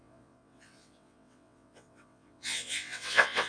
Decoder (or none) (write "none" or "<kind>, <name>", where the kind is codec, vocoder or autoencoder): vocoder, WaveNeXt